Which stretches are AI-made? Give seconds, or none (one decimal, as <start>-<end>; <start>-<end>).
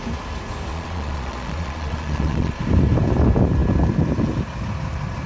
0.7-2.6